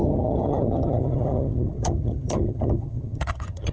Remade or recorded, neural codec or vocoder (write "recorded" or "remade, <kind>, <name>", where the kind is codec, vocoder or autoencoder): remade, vocoder, HiFi-GAN